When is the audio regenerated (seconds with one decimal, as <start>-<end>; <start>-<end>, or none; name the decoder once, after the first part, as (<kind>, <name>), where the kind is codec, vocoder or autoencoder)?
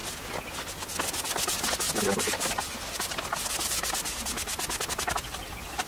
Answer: none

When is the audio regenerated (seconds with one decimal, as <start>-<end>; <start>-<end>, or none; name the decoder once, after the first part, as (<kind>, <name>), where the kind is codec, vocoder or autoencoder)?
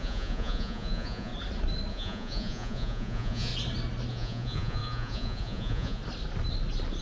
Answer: 0.0-1.3 (vocoder, Vocos); 1.9-3.5; 4.1-6.0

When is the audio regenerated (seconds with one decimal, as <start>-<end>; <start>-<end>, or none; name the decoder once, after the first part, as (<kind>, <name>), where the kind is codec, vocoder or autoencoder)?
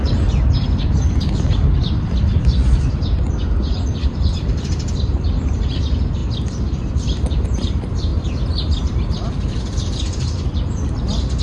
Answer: 0.0-8.1 (vocoder, BigVGAN v2); 9.6-11.4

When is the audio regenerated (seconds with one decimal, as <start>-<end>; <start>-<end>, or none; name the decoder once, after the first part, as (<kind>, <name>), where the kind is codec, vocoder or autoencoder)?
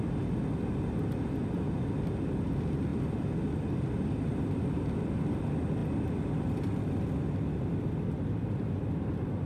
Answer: none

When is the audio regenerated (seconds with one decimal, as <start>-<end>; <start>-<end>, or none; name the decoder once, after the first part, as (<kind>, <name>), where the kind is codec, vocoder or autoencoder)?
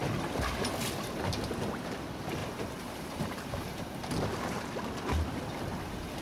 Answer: 2.4-4.2 (vocoder, BigVGAN v2)